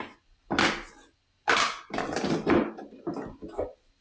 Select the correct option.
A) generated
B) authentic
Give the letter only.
B